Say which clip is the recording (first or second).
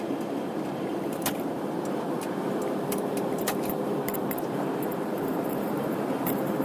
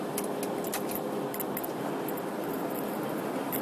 second